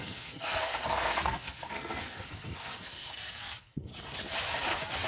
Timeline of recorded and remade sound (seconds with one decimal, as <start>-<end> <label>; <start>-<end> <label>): 0.0-3.9 remade; 3.9-5.1 recorded